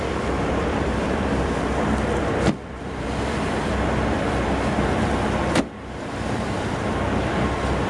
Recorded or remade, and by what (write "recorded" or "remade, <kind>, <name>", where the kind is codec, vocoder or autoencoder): remade, vocoder, BigVGAN v2